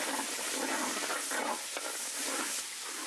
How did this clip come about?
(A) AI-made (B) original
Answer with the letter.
B